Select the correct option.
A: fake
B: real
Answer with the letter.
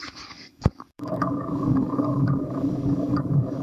A